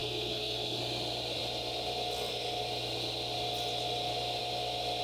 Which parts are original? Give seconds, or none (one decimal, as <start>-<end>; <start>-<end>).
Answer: 0.8-5.0